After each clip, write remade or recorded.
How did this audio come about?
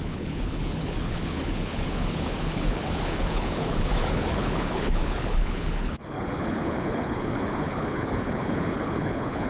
remade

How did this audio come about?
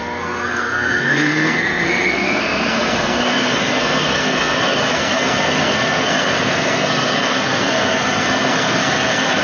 remade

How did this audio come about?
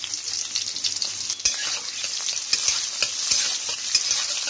recorded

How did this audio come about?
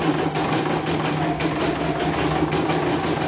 recorded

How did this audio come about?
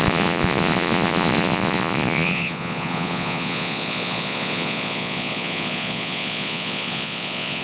remade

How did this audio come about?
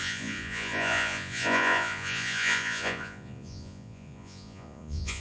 remade